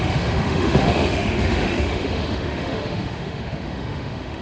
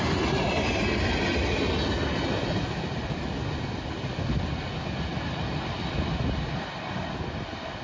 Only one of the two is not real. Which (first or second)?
first